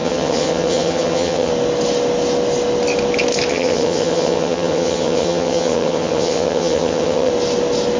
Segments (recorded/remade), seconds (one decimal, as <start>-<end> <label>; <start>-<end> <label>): 0.0-1.5 remade; 1.5-3.5 recorded; 3.5-7.3 remade; 7.3-8.0 recorded